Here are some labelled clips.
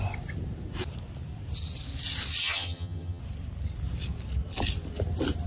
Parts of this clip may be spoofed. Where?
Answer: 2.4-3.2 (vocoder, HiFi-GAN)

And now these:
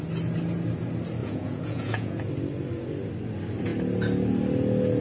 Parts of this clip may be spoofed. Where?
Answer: 1.2-2.3 (vocoder, Vocos)

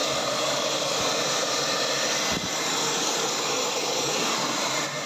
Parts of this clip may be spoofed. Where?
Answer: 0.0-1.0 (codec, DAC); 2.5-4.1

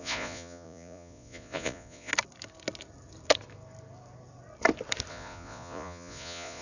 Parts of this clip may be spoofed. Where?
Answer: 0.0-2.1 (vocoder, Vocos); 5.1-6.6